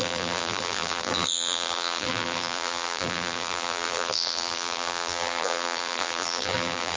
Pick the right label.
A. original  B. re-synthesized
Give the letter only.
B